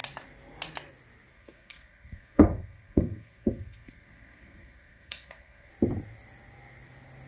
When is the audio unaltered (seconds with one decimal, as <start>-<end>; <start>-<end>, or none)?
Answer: 0.0-1.3; 5.7-7.3